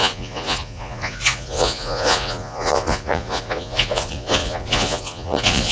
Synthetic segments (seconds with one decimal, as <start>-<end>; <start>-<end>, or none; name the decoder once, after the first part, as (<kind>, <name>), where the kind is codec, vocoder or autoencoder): 0.0-5.7 (vocoder, Vocos)

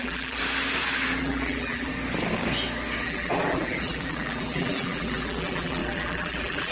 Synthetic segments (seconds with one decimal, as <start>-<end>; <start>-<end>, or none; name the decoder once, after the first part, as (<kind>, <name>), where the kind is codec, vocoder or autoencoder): 0.0-0.4 (vocoder, BigVGAN v2); 1.2-1.9; 3.0-6.7

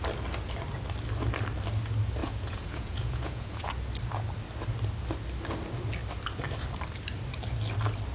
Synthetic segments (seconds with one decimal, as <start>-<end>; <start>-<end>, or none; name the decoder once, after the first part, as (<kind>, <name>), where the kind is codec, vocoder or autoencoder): 2.2-3.7 (vocoder, Vocos)

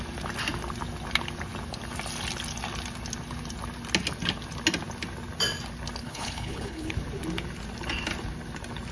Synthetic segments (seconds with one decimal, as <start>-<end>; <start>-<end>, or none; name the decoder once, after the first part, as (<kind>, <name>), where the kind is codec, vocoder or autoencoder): 6.0-6.9 (codec, HILCodec)

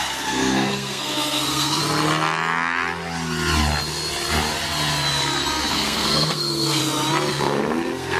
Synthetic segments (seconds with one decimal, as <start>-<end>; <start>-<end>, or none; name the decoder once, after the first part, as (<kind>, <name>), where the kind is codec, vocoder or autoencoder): 0.0-1.8 (codec, SNAC); 5.7-6.8; 7.3-8.2

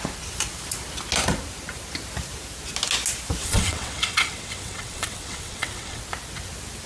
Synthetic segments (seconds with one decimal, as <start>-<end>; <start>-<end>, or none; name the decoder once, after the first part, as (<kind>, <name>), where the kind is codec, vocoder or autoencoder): 3.4-6.0 (vocoder, WaveNeXt)

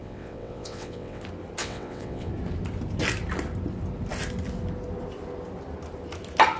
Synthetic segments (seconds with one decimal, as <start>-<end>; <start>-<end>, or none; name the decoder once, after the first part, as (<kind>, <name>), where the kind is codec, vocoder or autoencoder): 0.0-1.2 (vocoder, WaveNeXt); 1.6-2.3